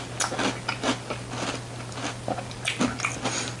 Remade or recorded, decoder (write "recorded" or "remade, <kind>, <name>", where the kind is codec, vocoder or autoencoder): recorded